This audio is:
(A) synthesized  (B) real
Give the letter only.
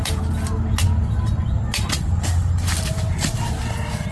B